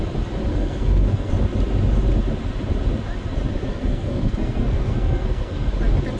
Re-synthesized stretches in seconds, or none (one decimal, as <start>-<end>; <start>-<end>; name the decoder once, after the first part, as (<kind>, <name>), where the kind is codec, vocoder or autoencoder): 0.5-1.3 (codec, SNAC); 3.7-5.7